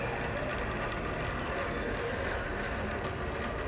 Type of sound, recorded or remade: recorded